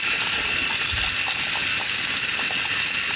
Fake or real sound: real